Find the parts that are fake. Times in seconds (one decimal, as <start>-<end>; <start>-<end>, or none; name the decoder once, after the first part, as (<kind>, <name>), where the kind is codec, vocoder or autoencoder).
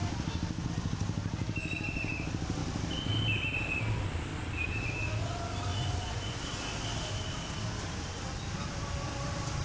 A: 5.7-6.4 (vocoder, Vocos)